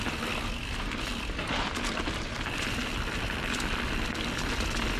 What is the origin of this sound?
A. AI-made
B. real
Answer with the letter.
B